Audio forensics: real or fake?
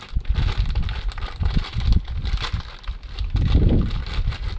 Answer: real